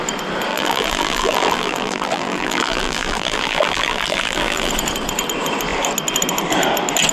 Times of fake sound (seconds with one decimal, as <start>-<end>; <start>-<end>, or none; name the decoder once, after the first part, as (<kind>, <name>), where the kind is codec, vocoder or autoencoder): 0.5-4.7 (vocoder, BigVGAN v2)